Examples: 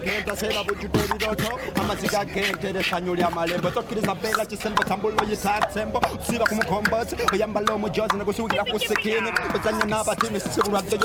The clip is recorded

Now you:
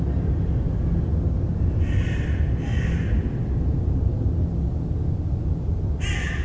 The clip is recorded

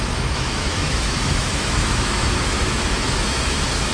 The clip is remade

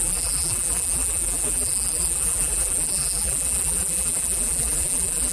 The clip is remade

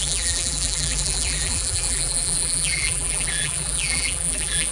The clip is remade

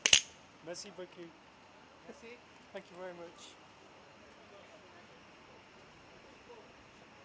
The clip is recorded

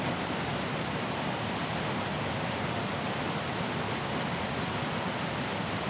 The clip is recorded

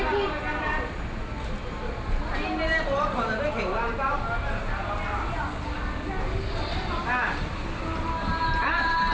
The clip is recorded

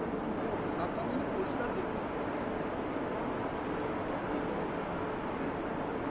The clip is recorded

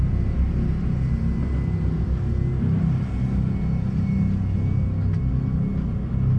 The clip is recorded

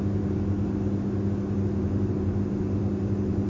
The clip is recorded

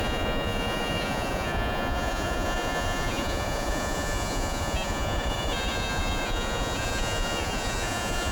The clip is remade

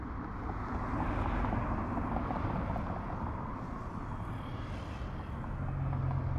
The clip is recorded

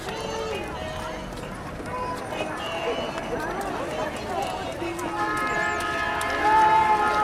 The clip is recorded